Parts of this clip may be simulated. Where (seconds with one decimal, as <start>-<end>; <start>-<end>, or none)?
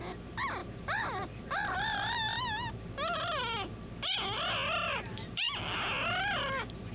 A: 0.6-2.7; 4.8-5.6